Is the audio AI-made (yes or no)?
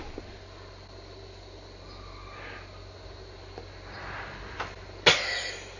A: no